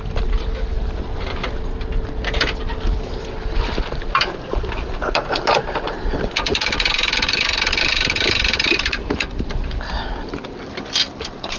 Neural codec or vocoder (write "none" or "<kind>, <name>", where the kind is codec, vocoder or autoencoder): none